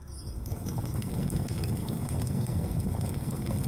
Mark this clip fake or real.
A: fake